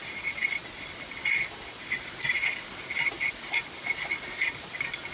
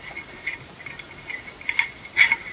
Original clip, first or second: second